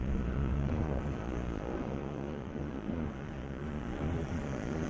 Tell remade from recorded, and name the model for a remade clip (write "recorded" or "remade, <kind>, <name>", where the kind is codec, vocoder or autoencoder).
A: remade, vocoder, Vocos